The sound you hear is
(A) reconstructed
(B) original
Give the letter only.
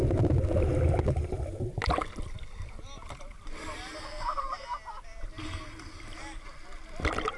B